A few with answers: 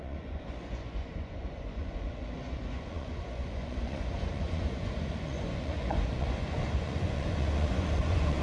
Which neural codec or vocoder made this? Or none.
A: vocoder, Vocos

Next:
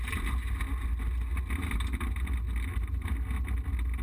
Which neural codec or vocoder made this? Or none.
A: none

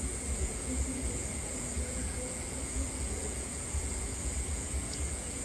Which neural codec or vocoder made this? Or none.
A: vocoder, Vocos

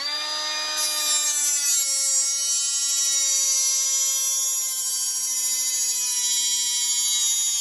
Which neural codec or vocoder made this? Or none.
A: none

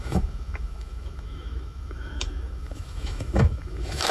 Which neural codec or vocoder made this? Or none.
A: autoencoder, DAC-VAE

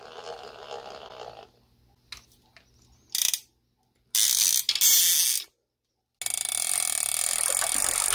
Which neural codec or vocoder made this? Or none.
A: none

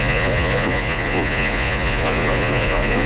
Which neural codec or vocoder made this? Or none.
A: vocoder, Vocos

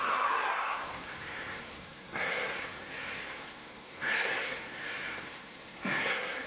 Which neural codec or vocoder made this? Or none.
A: codec, SNAC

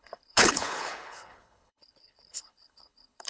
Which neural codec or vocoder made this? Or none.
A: codec, HILCodec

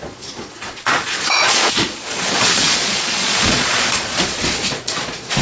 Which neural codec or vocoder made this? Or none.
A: vocoder, Vocos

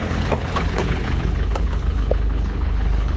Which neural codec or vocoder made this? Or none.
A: codec, HILCodec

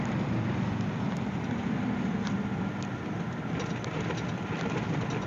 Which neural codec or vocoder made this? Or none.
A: vocoder, BigVGAN v2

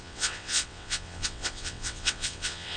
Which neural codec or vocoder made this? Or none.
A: vocoder, WaveNeXt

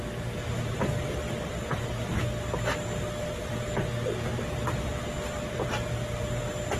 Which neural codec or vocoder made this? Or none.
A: none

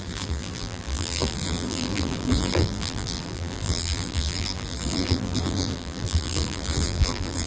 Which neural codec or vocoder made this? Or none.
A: vocoder, BigVGAN v2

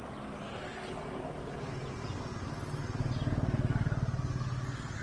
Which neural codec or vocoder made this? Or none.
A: none